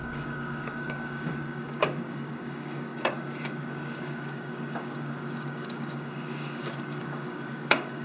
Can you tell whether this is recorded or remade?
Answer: remade